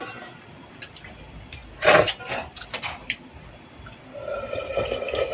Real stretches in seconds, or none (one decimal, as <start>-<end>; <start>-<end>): 0.0-5.3